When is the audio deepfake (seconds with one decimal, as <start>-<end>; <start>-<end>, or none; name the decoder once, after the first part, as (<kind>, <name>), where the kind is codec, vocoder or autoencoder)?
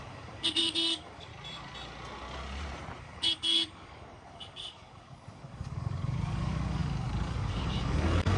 0.0-1.3 (codec, DAC); 3.0-8.4